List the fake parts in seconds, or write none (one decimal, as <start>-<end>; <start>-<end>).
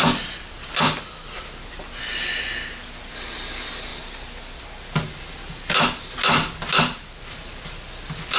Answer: none